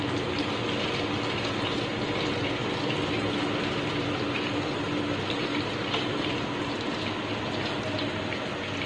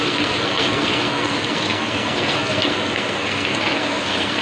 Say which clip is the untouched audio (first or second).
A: first